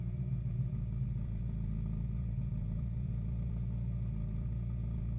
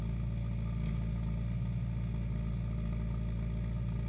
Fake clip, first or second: first